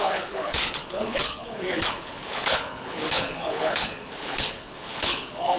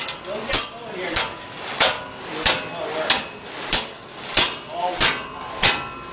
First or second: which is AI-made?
first